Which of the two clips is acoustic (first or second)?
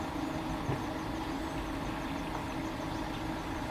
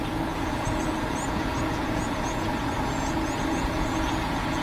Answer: first